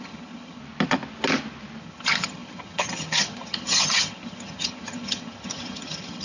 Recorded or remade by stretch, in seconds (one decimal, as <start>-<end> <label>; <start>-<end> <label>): 0.0-0.6 remade; 0.6-1.8 recorded; 1.8-6.2 remade